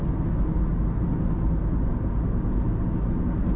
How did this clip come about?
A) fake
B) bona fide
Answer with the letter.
B